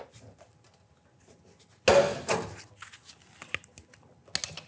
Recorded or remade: recorded